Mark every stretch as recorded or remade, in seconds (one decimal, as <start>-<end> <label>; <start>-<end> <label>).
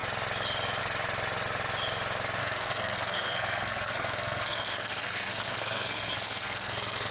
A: 0.0-2.4 recorded; 2.4-7.1 remade